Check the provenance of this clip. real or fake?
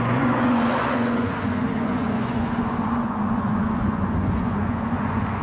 fake